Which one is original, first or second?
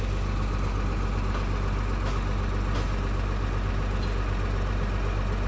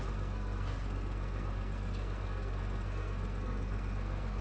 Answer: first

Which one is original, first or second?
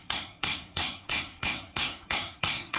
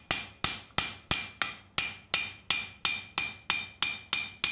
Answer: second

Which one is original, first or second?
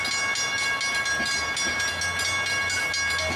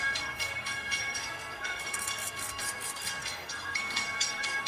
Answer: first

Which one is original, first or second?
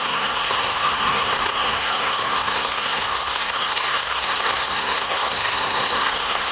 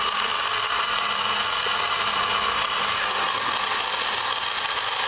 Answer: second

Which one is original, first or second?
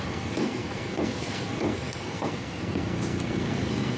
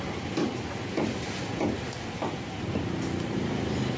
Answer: second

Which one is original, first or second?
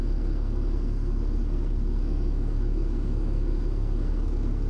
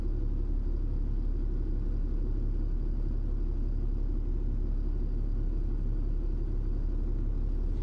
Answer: second